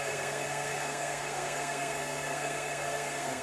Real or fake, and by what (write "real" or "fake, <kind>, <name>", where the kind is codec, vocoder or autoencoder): fake, codec, SNAC